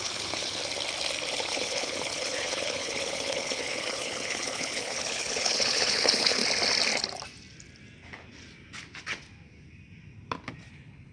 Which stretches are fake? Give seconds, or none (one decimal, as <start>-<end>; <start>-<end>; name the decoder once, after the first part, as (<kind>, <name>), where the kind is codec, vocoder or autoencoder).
0.0-0.6 (codec, HILCodec); 1.3-6.4; 10.7-11.1